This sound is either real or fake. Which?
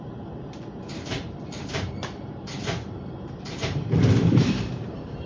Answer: fake